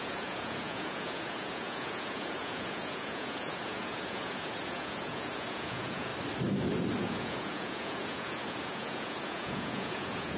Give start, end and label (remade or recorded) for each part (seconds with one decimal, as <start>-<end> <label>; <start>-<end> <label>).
0.0-6.1 remade; 6.1-7.0 recorded; 7.0-10.4 remade